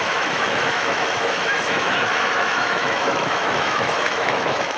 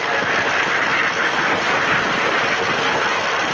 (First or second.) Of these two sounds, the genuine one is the second